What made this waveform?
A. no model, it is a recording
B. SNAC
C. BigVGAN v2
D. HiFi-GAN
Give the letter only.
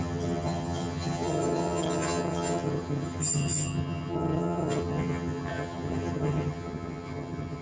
D